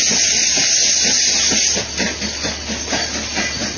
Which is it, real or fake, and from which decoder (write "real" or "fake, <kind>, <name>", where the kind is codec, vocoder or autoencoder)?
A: real